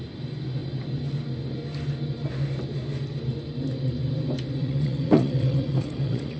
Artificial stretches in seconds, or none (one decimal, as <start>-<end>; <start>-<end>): 4.6-6.4